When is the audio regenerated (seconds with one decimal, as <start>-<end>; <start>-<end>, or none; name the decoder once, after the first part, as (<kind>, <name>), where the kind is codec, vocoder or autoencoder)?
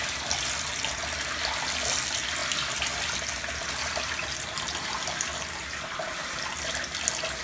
none